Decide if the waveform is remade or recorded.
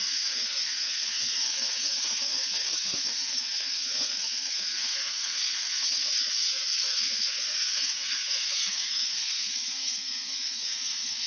remade